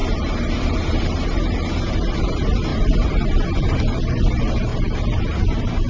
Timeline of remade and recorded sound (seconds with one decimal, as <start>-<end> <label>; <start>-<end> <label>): 0.0-5.9 recorded